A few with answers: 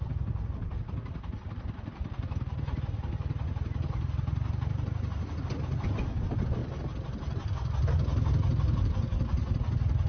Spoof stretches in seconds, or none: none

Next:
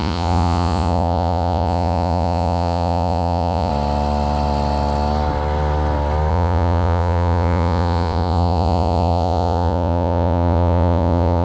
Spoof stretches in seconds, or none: 0.0-3.7 (vocoder, Vocos); 6.3-11.4

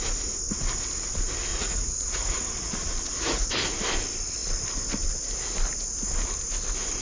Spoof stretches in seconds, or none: 1.5-3.5 (vocoder, Vocos)

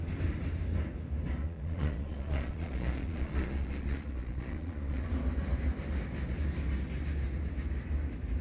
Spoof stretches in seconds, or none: 1.4-5.1 (vocoder, Vocos)

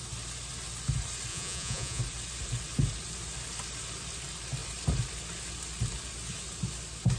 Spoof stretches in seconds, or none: 1.3-2.0 (vocoder, Vocos)